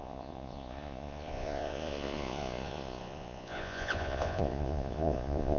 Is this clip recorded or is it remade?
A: remade